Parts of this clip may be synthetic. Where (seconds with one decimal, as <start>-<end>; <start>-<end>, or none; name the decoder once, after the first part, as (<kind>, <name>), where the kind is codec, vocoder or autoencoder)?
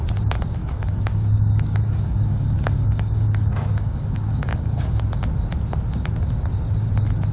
0.6-5.0 (codec, DAC)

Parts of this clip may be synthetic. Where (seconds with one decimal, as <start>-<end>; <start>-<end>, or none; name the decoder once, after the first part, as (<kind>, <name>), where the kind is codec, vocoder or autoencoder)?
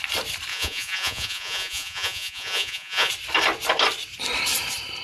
0.5-3.1 (vocoder, Vocos)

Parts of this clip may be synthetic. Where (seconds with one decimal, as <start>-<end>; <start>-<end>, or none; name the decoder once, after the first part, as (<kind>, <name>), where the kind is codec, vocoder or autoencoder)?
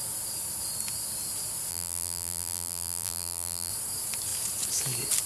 1.7-3.7 (vocoder, BigVGAN v2)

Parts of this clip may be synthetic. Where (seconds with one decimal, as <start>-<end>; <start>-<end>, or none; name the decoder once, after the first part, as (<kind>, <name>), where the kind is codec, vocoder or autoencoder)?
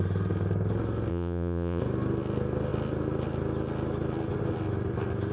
1.1-1.8 (vocoder, Vocos)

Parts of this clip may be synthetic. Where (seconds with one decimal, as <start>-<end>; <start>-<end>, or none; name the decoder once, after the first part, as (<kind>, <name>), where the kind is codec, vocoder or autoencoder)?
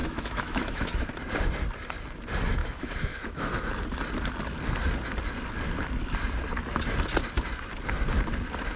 0.0-1.1 (autoencoder, DAC-VAE); 2.6-3.7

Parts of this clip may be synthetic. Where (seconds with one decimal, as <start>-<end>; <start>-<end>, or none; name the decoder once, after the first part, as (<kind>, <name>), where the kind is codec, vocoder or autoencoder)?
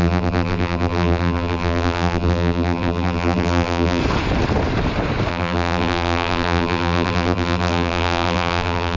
0.0-4.0 (vocoder, BigVGAN v2); 5.3-9.0